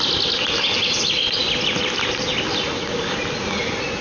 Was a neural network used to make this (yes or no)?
no